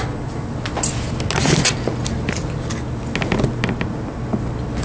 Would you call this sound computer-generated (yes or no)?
no